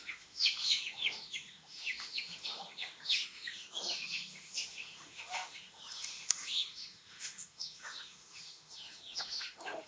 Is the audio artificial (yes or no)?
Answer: yes